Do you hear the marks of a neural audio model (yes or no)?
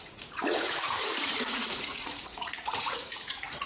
yes